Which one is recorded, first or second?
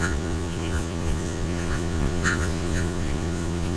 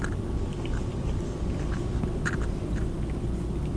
second